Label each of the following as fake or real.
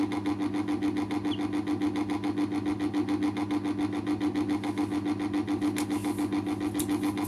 real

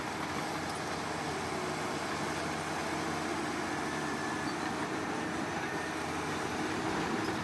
real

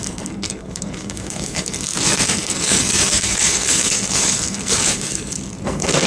fake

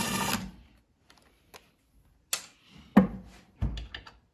real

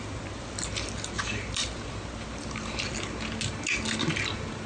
real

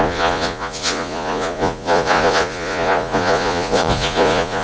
fake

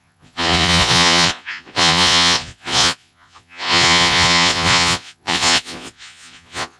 fake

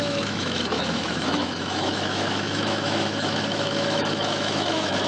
fake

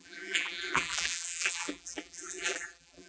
fake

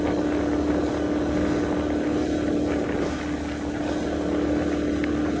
real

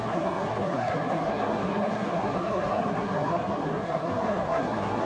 fake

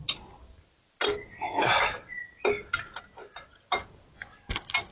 real